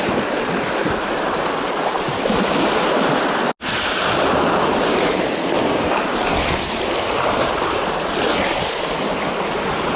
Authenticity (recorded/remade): recorded